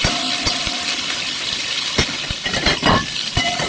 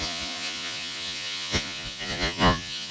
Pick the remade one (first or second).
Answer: second